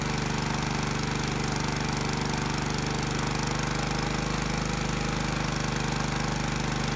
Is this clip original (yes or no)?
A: yes